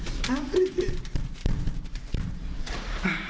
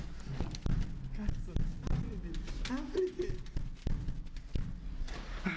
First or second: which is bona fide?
second